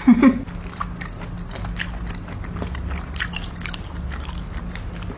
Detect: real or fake real